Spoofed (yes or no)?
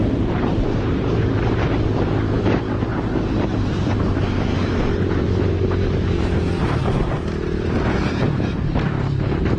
yes